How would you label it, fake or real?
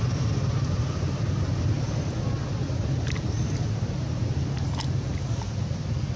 real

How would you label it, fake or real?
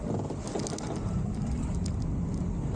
real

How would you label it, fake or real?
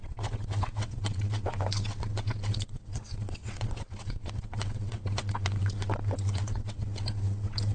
fake